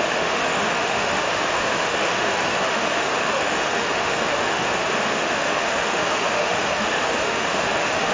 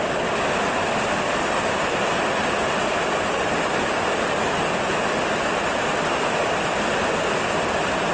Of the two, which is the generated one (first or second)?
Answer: first